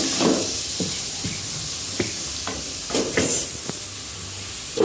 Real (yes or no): yes